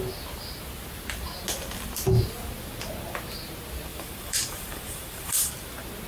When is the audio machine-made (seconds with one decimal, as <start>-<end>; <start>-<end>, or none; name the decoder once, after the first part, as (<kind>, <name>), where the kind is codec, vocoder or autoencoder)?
3.9-5.5 (vocoder, BigVGAN v2)